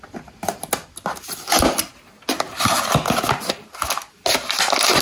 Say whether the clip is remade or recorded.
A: recorded